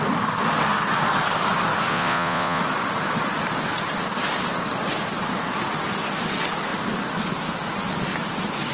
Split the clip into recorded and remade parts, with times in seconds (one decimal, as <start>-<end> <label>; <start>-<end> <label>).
0.0-1.9 recorded; 1.9-2.6 remade; 2.6-8.7 recorded